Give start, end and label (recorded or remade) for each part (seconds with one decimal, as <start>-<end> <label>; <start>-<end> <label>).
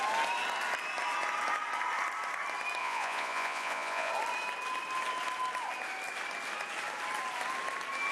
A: 0.0-2.8 recorded; 2.8-4.1 remade; 4.1-8.1 recorded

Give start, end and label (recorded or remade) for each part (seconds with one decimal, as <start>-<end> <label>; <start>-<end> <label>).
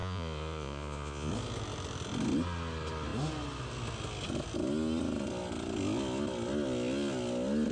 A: 0.0-1.3 remade; 1.3-7.7 recorded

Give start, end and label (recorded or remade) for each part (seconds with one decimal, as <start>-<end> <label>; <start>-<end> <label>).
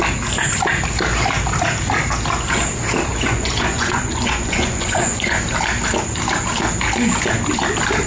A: 0.0-3.1 recorded; 3.1-5.4 remade; 5.4-8.1 recorded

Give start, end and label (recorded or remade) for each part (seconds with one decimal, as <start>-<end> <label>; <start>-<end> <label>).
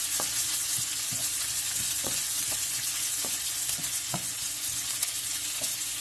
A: 0.0-6.0 remade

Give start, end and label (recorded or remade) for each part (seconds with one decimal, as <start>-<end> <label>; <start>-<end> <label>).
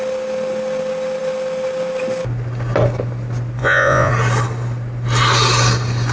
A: 0.0-3.6 recorded; 3.6-4.1 remade; 4.1-6.1 recorded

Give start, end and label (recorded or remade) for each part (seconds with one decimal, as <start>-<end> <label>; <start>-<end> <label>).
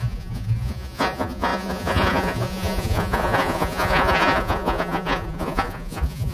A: 0.0-6.3 remade